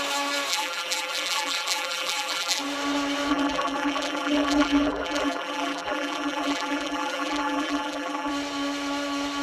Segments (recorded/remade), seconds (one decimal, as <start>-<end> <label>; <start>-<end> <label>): 0.0-0.5 recorded; 0.5-2.6 remade; 2.6-3.3 recorded; 3.3-8.3 remade; 8.3-9.4 recorded

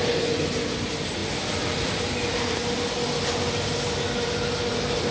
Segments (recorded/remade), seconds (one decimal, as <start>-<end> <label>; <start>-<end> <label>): 0.0-1.2 recorded; 1.2-2.0 remade; 2.0-5.1 recorded

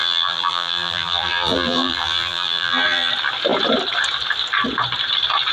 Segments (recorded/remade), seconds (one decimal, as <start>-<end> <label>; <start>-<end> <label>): 0.0-3.1 remade; 3.1-5.5 recorded

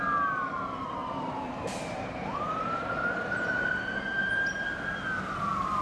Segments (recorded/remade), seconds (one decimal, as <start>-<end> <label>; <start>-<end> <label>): 0.0-1.0 recorded; 1.0-3.8 remade; 3.8-5.8 recorded

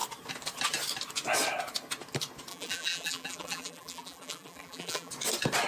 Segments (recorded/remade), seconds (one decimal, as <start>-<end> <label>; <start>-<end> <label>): 0.0-2.5 recorded; 2.5-5.1 remade; 5.1-5.7 recorded

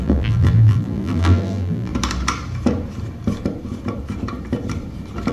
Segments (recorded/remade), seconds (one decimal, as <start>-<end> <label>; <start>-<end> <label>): 0.0-1.9 remade; 1.9-5.3 recorded

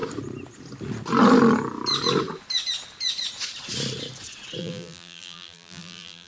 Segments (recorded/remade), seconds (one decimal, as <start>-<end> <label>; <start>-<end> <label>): 0.0-4.6 recorded; 4.6-6.3 remade

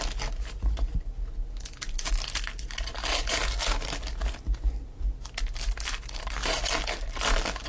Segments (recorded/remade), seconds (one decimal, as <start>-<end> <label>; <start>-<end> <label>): 0.0-7.7 recorded